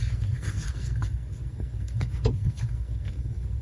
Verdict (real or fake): fake